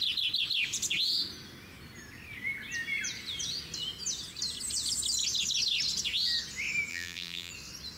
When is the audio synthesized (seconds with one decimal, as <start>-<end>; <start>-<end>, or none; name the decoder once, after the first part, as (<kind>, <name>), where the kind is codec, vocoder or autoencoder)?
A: 6.9-7.5 (vocoder, BigVGAN v2)